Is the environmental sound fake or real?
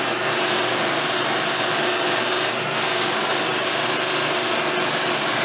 real